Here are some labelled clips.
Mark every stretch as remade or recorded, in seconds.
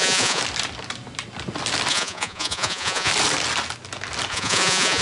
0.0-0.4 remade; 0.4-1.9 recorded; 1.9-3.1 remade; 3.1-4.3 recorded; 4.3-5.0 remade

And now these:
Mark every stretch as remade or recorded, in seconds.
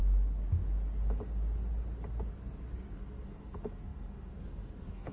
0.0-2.3 recorded; 2.3-5.1 remade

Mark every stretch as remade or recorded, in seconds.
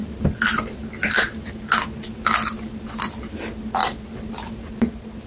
0.0-5.3 recorded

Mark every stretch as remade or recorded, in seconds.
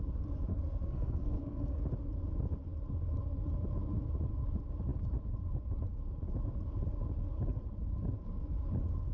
0.0-0.5 recorded; 0.5-1.8 remade; 1.8-9.1 recorded